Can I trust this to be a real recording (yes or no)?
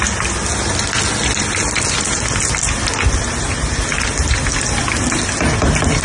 yes